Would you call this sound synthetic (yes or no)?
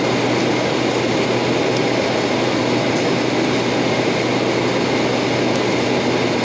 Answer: no